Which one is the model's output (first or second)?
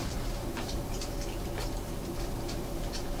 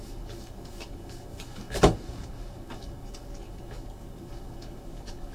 second